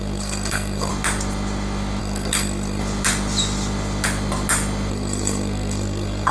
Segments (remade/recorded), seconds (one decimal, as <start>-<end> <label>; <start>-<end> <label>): 0.0-0.9 remade; 0.9-2.0 recorded; 2.0-2.8 remade; 2.8-4.9 recorded; 4.9-6.3 remade